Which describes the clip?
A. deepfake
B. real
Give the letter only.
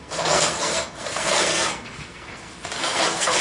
A